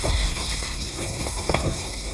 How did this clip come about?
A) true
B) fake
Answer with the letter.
B